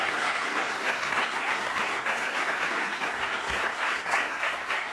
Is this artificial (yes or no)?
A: yes